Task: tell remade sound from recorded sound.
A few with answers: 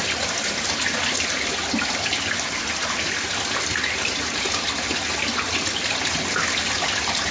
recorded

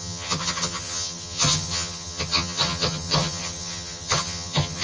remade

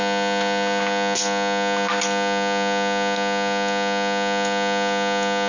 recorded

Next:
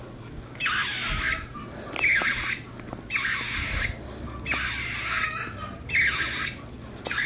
recorded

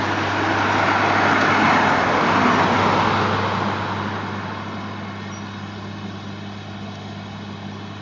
recorded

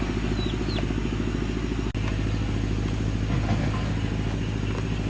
recorded